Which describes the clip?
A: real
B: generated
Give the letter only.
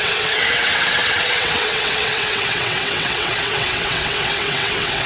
B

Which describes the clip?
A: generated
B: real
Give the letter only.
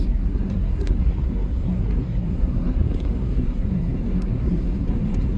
A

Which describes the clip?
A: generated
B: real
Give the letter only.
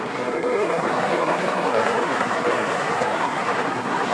A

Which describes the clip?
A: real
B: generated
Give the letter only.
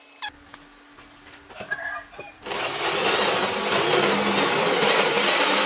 A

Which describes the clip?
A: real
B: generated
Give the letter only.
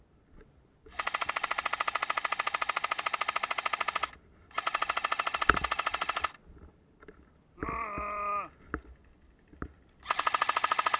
A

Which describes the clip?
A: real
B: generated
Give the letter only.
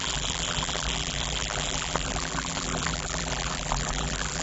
B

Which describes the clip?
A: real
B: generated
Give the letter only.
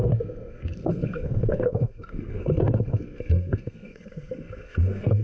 B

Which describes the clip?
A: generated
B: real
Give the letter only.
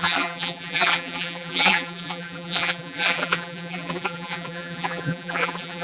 A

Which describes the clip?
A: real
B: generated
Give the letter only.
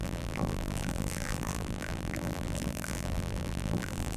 B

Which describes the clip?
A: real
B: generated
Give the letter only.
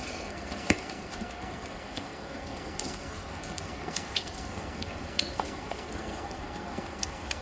B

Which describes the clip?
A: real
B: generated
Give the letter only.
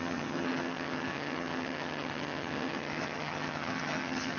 B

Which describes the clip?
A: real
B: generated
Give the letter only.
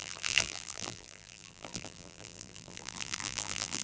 B